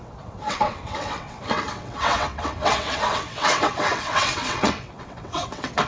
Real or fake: fake